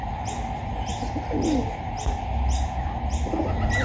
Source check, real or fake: real